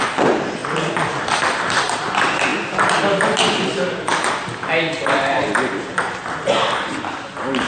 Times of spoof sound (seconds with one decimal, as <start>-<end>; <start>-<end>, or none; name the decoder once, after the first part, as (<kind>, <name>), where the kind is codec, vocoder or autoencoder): none